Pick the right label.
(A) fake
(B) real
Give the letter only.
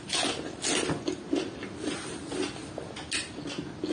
B